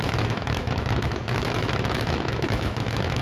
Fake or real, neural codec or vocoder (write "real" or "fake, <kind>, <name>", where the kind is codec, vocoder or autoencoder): fake, autoencoder, DAC-VAE